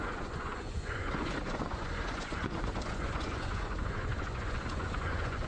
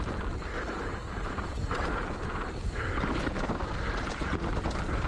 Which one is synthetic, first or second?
first